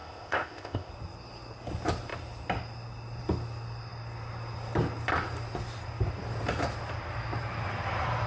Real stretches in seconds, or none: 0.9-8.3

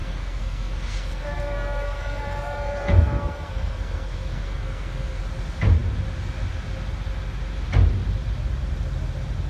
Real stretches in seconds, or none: 5.2-9.5